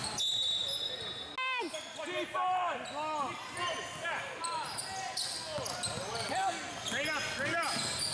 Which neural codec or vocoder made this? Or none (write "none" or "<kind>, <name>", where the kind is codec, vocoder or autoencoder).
none